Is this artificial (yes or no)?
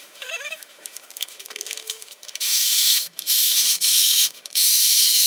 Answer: yes